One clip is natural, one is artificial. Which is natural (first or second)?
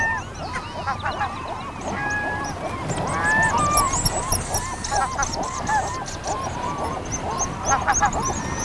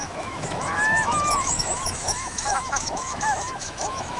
first